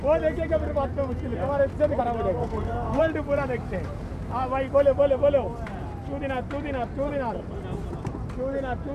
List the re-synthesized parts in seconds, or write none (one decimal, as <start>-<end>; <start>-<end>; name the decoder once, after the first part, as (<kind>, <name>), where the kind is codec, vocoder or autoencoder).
2.4-3.0 (codec, SNAC)